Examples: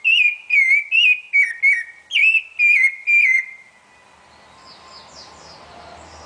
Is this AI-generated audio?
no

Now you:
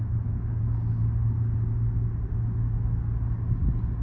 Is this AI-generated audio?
no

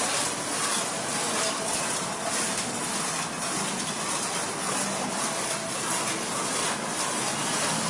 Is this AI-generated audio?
no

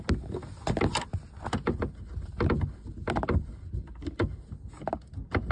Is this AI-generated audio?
no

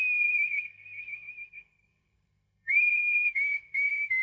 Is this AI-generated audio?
yes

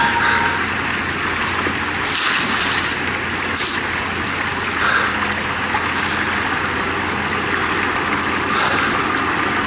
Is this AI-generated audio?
no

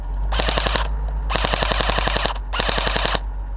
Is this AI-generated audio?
no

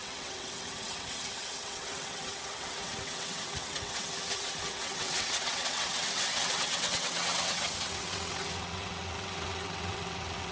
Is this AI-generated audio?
yes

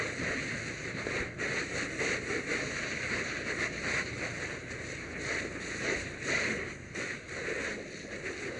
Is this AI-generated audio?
no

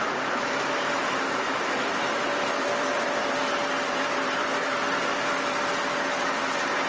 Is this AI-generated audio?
yes